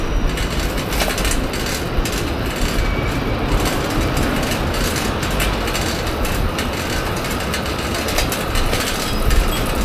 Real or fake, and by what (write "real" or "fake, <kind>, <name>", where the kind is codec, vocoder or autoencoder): real